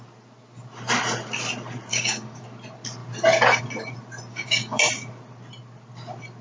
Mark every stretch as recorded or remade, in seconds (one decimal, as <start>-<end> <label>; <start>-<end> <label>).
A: 0.0-1.9 recorded; 1.9-2.4 remade; 2.4-4.3 recorded; 4.3-4.8 remade; 4.8-6.4 recorded

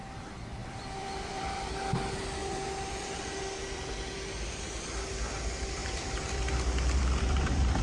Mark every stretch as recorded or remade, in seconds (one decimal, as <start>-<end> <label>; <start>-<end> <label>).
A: 0.0-0.6 recorded; 0.6-1.7 remade; 1.7-2.4 recorded; 2.4-3.4 remade; 3.4-5.8 recorded; 5.8-7.8 remade

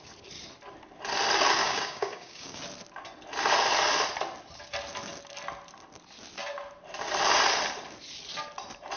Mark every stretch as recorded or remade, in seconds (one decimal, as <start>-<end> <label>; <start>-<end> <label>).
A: 0.0-1.6 recorded; 1.6-2.6 remade; 2.6-9.0 recorded